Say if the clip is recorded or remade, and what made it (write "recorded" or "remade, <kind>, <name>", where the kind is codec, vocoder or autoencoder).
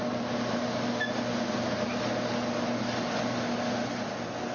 recorded